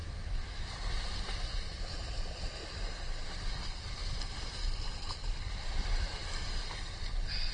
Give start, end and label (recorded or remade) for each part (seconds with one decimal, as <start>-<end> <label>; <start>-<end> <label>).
0.0-0.7 remade; 0.7-7.5 recorded